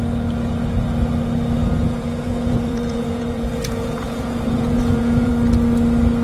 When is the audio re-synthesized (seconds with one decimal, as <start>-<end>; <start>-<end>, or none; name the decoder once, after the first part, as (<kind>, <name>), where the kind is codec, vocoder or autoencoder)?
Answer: 1.6-5.3 (vocoder, Vocos)